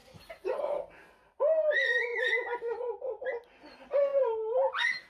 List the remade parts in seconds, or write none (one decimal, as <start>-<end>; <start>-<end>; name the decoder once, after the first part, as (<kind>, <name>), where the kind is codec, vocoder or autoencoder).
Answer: 0.0-0.6 (vocoder, BigVGAN v2); 2.1-2.8; 4.1-5.1